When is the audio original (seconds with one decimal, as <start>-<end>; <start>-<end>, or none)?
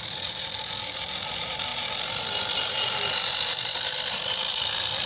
0.0-5.1